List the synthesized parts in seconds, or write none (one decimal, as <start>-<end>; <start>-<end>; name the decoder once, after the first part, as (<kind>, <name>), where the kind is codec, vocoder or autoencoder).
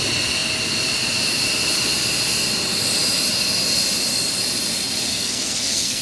5.1-6.0 (codec, SNAC)